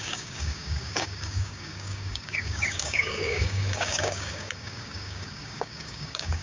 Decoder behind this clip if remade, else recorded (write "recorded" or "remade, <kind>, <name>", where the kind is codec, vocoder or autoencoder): remade, codec, DAC